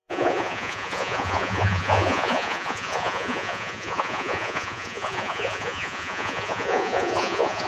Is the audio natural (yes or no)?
no